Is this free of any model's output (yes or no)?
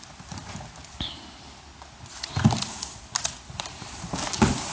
yes